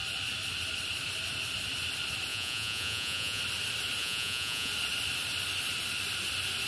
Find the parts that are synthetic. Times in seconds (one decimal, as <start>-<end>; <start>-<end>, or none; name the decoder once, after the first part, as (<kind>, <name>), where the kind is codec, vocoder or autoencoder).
2.3-3.4 (vocoder, Vocos); 4.0-4.7